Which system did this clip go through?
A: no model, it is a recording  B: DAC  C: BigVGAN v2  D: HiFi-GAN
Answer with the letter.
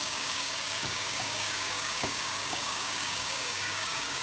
B